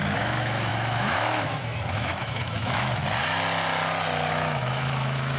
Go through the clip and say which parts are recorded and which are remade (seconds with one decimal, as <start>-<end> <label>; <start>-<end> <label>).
0.0-3.0 remade; 3.0-4.3 recorded; 4.3-5.4 remade